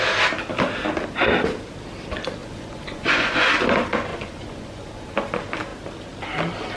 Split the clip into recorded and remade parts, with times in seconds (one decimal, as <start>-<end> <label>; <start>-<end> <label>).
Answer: 0.0-2.4 recorded; 2.4-3.5 remade; 3.5-4.1 recorded; 4.1-5.1 remade; 5.1-6.8 recorded